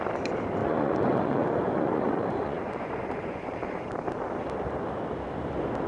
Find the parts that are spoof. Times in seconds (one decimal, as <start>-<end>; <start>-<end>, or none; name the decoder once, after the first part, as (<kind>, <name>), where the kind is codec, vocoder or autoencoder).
0.6-3.9 (vocoder, Vocos)